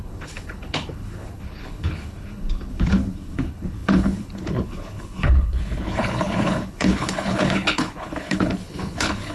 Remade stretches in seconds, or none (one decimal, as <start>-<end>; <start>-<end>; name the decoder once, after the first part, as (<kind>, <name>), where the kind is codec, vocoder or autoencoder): 0.0-9.3 (codec, HILCodec)